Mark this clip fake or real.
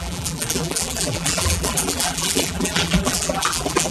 fake